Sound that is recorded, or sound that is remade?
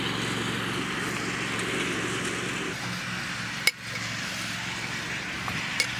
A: recorded